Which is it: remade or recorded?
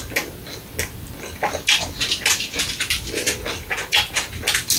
recorded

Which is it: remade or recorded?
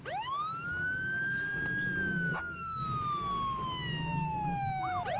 recorded